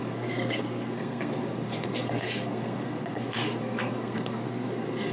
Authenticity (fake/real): fake